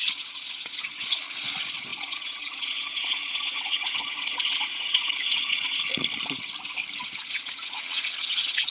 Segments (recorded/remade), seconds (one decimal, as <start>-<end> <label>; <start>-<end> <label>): 0.0-5.9 remade; 5.9-7.0 recorded; 7.0-8.7 remade